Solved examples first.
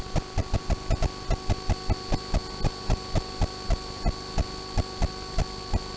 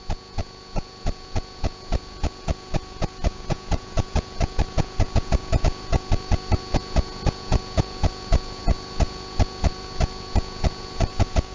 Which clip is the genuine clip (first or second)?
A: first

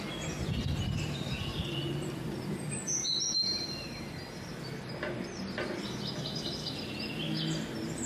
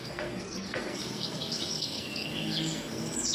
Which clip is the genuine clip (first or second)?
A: first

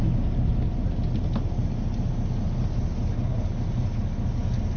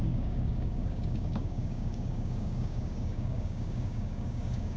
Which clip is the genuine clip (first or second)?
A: first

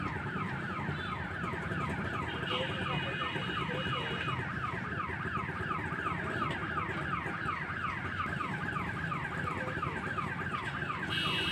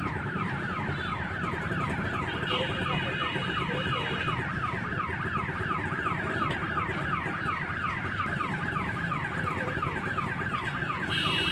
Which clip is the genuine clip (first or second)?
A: first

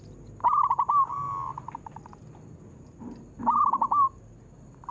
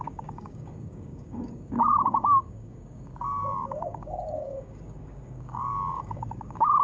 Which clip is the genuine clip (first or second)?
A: first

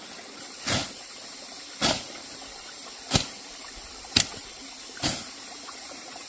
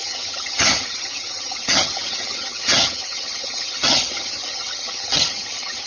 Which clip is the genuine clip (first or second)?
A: first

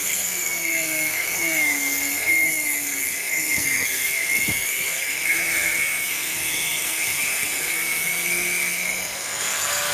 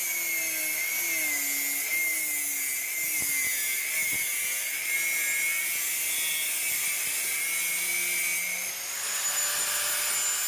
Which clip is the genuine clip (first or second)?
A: second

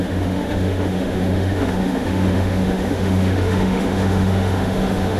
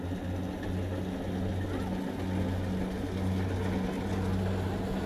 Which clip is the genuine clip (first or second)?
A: second